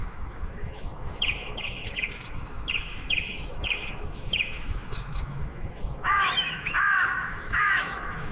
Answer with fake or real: fake